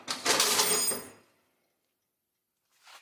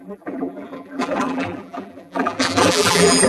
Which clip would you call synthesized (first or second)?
second